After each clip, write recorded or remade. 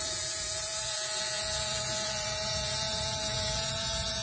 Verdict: remade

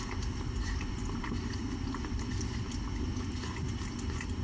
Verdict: recorded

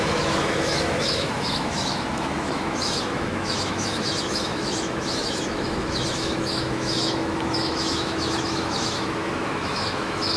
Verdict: remade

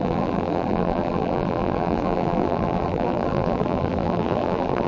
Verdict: remade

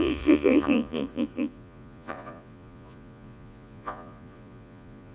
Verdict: remade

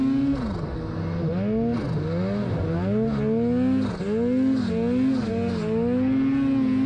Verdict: recorded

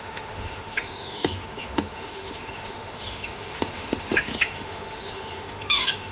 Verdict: remade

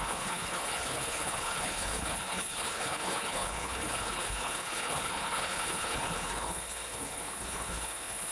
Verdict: remade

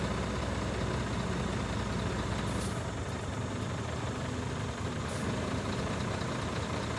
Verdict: recorded